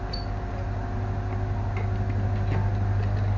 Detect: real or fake real